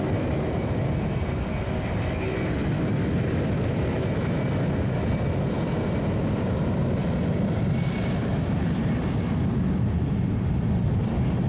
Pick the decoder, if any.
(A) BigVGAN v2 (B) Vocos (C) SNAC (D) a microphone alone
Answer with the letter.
D